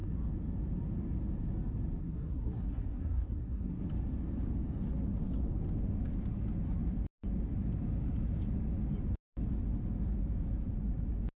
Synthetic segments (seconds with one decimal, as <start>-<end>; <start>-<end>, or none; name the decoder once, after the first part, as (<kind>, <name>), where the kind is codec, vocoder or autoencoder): 2.0-3.8 (codec, SNAC)